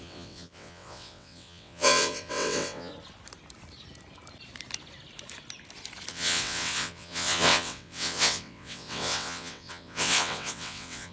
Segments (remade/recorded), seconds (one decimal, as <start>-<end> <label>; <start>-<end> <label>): 0.0-2.9 remade; 2.9-6.1 recorded; 6.1-11.1 remade

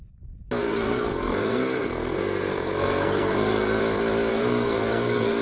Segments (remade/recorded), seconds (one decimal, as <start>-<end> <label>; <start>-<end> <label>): 0.0-0.6 recorded; 0.6-3.8 remade; 3.8-4.3 recorded; 4.3-5.4 remade

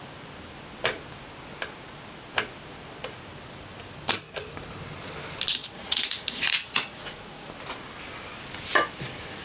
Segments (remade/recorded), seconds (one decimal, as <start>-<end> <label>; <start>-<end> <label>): 0.0-5.6 recorded; 5.6-7.5 remade; 7.5-9.4 recorded

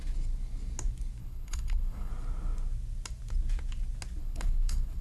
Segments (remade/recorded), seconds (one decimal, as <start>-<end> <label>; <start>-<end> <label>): 0.0-1.2 recorded; 1.2-2.1 remade; 2.1-4.2 recorded; 4.2-5.0 remade

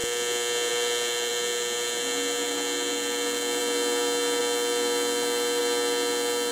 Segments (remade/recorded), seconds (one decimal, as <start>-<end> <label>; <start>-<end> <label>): 0.0-6.5 recorded

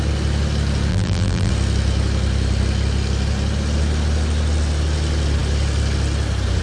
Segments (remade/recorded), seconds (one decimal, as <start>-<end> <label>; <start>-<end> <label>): 0.0-0.9 recorded; 0.9-1.5 remade; 1.5-6.6 recorded

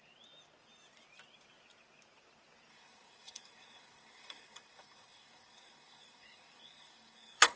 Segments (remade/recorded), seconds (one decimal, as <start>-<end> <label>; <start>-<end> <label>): 0.0-2.7 recorded; 2.7-7.6 remade

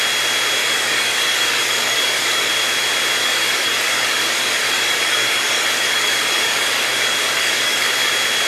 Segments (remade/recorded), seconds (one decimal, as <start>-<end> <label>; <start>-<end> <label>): 0.0-0.6 recorded; 0.6-2.5 remade; 2.5-3.2 recorded; 3.2-8.1 remade; 8.1-8.5 recorded